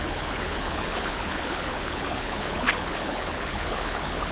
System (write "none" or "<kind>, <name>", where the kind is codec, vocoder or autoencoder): codec, HILCodec